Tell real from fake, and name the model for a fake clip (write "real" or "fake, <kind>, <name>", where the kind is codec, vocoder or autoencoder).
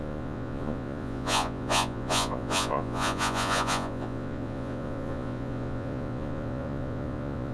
fake, vocoder, Vocos